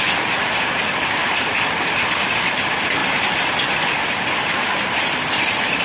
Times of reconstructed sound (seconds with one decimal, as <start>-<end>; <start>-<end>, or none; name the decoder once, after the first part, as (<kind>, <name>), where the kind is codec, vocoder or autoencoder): 1.2-1.9 (vocoder, BigVGAN v2); 3.0-3.6